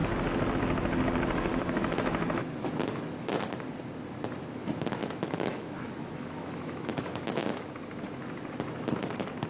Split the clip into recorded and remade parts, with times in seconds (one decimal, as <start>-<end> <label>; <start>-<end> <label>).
0.0-1.5 recorded; 1.5-2.4 remade; 2.4-5.0 recorded; 5.0-7.7 remade; 7.7-9.5 recorded